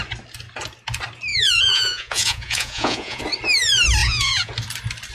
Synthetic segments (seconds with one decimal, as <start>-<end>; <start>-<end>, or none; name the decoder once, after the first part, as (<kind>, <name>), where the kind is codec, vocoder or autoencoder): 1.3-3.2 (vocoder, Vocos); 4.0-4.5